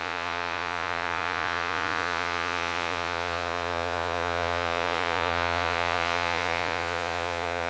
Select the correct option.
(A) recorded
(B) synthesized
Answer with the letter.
B